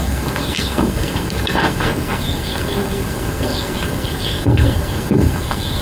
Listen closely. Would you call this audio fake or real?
fake